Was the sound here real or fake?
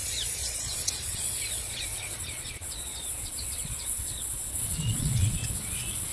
fake